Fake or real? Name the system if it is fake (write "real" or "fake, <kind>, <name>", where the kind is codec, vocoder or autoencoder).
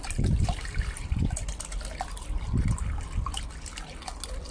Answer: real